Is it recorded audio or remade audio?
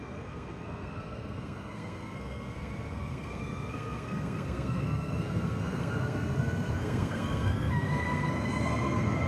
remade